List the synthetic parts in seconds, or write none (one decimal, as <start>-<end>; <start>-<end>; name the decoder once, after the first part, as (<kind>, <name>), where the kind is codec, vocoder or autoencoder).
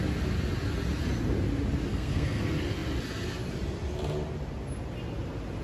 1.9-2.4 (codec, SNAC)